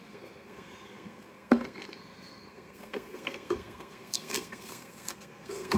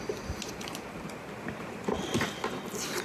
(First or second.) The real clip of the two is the second